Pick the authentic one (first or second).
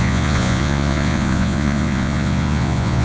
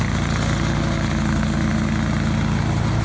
second